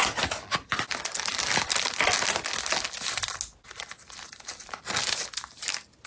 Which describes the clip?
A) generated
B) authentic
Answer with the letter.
B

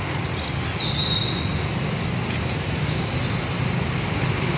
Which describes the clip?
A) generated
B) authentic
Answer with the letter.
B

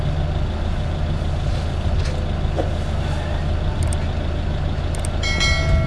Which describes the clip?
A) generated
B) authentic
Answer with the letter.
B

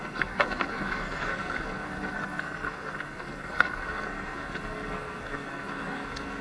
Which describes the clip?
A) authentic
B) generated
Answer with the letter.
B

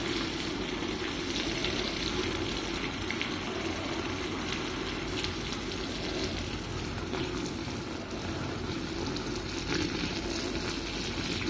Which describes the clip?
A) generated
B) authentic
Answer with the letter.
B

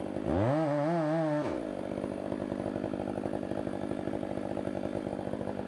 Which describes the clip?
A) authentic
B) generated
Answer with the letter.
A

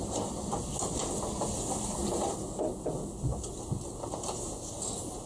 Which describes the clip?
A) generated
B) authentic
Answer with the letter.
B